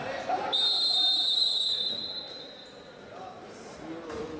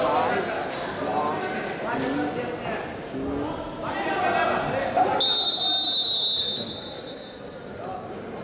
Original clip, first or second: second